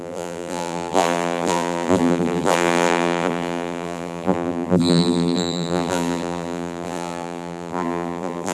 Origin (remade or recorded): remade